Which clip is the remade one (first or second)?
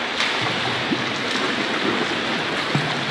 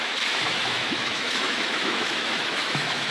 second